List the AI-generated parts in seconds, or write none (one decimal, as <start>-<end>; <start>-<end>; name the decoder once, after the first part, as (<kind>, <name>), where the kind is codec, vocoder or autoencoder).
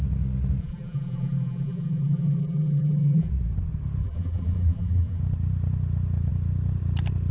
0.6-3.3 (vocoder, BigVGAN v2); 4.0-5.2